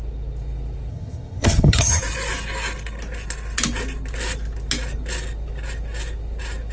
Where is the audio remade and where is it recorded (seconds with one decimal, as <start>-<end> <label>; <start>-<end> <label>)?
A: 0.0-0.9 recorded; 0.9-2.0 remade; 2.0-6.7 recorded